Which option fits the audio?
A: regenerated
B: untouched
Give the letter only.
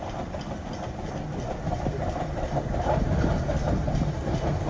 B